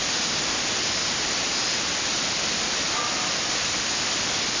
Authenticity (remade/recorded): recorded